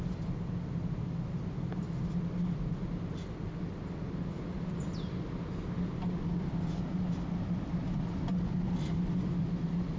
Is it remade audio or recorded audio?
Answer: recorded